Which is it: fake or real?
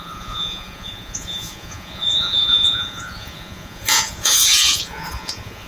fake